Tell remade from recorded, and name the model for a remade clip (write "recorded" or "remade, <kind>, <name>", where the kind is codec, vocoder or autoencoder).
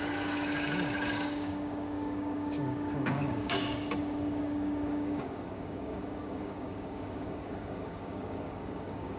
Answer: remade, codec, DAC